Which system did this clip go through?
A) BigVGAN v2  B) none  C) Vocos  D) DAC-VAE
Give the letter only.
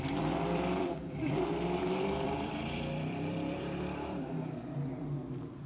A